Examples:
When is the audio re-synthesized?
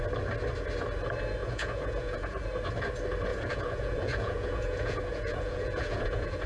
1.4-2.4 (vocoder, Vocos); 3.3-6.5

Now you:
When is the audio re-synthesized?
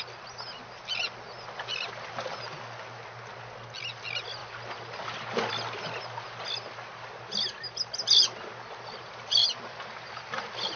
none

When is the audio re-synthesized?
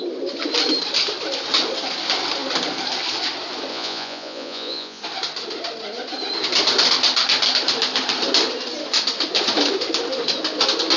3.7-5.0 (vocoder, Vocos)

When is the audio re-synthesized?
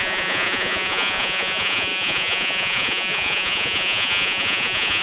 0.0-5.0 (vocoder, Vocos)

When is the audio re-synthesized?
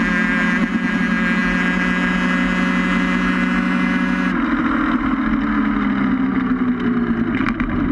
none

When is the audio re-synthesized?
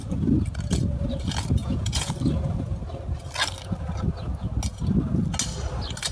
1.6-2.1 (vocoder, Vocos)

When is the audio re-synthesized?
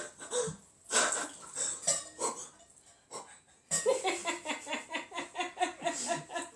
none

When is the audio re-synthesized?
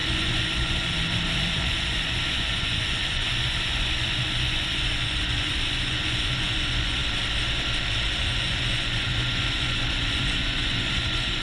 0.0-7.0 (vocoder, Vocos); 8.2-11.4